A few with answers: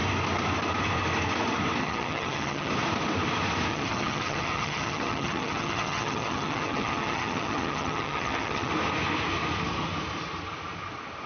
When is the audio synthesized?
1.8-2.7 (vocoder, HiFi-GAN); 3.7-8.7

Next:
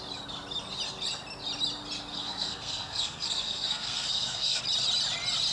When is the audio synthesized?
2.1-4.6 (codec, SNAC)

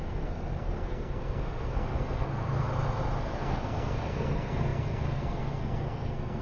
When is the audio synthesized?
0.0-2.7 (codec, SNAC); 3.2-6.4

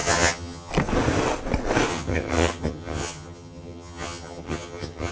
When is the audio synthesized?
0.0-0.7 (vocoder, HiFi-GAN); 1.9-5.1

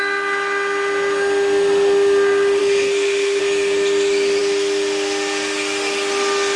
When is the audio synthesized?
2.6-3.4 (codec, SNAC)

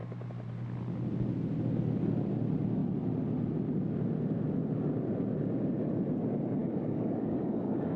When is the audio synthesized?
6.6-8.0 (codec, DAC)